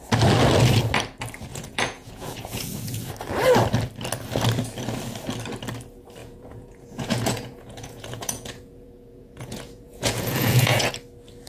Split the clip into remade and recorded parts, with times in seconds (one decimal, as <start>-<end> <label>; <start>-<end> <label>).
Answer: 0.0-1.5 recorded; 1.5-3.1 remade; 3.1-6.2 recorded; 6.2-10.9 remade; 10.9-11.5 recorded